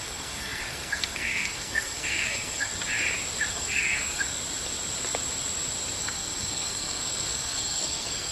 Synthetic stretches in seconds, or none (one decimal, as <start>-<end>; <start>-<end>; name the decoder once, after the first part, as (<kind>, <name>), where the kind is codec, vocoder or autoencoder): 0.0-2.7 (codec, SNAC); 3.5-4.4; 6.0-8.3